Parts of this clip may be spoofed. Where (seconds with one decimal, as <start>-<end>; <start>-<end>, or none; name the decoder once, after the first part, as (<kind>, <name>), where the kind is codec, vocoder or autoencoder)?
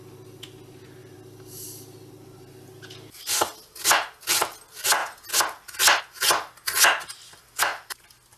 1.0-2.1 (vocoder, BigVGAN v2)